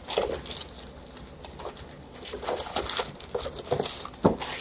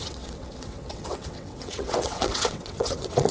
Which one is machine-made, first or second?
second